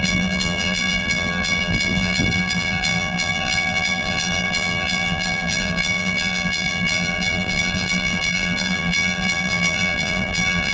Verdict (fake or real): fake